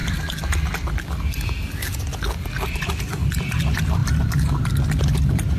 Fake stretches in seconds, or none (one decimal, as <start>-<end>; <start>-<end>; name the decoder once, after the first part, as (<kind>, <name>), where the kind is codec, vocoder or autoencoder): none

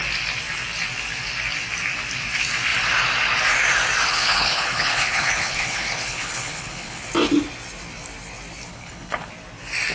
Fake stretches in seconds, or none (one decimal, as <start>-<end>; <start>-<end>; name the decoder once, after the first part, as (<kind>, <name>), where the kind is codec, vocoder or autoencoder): 4.1-7.1 (codec, HILCodec); 8.7-9.3

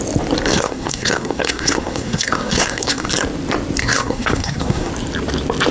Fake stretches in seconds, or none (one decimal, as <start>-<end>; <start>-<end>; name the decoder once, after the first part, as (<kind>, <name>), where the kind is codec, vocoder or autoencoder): 0.5-3.1 (codec, SNAC); 3.8-4.9

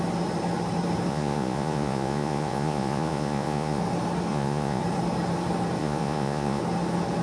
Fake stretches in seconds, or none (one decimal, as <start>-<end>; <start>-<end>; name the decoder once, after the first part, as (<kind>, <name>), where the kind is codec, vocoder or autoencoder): 1.1-3.8 (vocoder, Vocos); 4.3-4.8; 5.8-6.6